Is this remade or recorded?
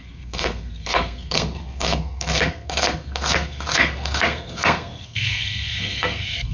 remade